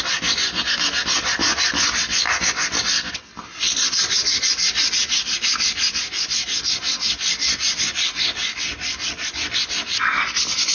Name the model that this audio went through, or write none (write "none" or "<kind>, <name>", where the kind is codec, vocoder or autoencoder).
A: none